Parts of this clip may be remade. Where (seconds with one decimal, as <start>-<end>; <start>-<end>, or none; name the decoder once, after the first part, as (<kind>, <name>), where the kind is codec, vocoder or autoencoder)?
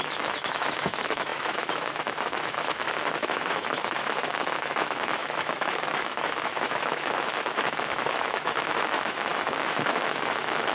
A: 0.0-10.7 (autoencoder, DAC-VAE)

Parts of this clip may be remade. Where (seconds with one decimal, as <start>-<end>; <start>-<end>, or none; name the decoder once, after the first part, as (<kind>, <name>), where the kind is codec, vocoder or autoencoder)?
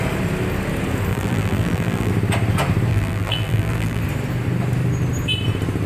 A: 1.1-2.1 (vocoder, BigVGAN v2); 2.9-4.0